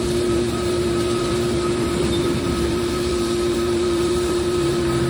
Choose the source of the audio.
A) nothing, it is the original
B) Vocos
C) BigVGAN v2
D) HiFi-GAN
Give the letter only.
C